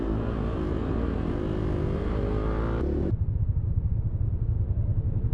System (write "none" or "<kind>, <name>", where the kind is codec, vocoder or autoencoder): none